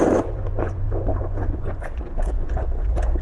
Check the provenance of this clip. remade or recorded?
remade